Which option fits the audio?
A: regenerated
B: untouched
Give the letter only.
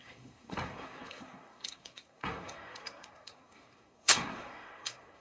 A